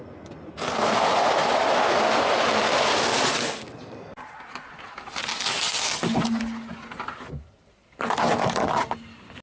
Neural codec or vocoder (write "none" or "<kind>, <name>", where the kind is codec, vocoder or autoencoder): none